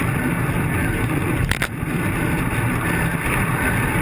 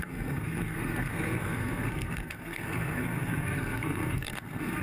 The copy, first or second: second